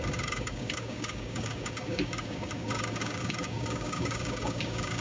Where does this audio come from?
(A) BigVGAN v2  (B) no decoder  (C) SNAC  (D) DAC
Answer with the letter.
D